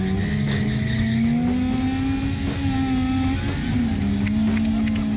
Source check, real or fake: real